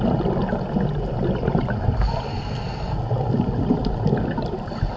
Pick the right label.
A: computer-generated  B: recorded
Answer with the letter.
B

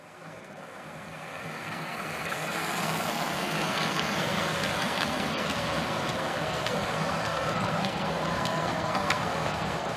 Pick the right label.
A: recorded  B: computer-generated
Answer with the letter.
B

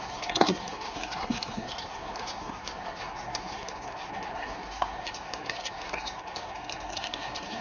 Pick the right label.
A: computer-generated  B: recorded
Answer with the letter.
A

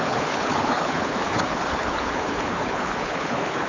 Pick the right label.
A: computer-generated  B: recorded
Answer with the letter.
A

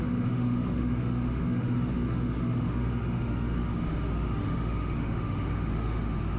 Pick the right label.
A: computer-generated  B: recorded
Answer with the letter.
A